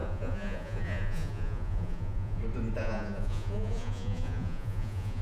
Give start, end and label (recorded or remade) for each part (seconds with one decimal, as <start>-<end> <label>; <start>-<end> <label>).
0.0-2.4 remade; 2.4-2.8 recorded; 2.8-5.2 remade